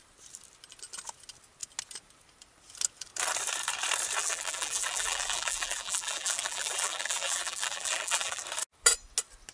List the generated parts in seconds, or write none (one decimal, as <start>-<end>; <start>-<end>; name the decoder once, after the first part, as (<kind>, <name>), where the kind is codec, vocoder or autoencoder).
4.2-8.4 (vocoder, BigVGAN v2)